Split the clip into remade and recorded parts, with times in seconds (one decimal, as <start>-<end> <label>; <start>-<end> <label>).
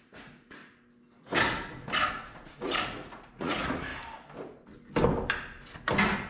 0.0-0.6 remade; 0.6-2.1 recorded; 2.1-3.9 remade; 3.9-6.3 recorded